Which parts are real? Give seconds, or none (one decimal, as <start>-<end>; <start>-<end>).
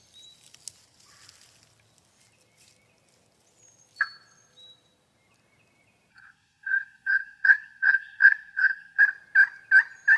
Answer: 0.0-6.1; 9.0-10.2